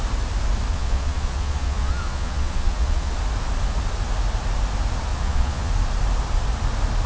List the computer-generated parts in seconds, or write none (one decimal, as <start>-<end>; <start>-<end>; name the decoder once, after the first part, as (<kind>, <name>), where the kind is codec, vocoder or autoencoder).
0.7-3.1 (vocoder, Vocos); 5.1-5.7